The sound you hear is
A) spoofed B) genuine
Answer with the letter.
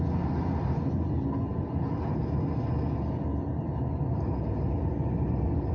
B